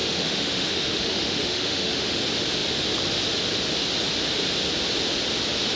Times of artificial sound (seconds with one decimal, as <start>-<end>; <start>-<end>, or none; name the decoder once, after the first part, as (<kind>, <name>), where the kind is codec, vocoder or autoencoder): 0.0-2.2 (autoencoder, DAC-VAE)

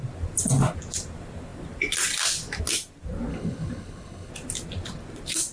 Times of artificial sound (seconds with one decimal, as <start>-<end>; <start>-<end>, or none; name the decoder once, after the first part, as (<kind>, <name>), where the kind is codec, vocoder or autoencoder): 3.3-4.3 (codec, HILCodec)

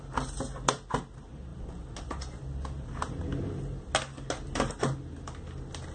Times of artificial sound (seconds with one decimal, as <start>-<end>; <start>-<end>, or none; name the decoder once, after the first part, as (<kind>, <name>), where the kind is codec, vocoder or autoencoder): none

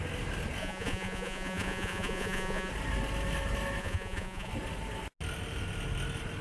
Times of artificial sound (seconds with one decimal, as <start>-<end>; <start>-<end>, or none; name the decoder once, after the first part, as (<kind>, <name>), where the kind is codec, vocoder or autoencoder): 0.6-2.7 (vocoder, Vocos); 3.8-4.5

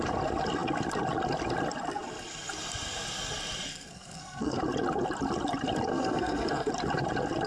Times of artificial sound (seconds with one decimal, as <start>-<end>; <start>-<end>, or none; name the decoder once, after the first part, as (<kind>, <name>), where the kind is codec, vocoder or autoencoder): 3.7-4.6 (codec, SNAC); 5.9-6.7